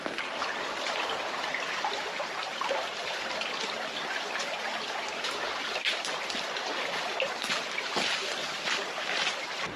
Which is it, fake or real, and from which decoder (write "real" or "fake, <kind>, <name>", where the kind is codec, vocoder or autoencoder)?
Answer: fake, vocoder, BigVGAN v2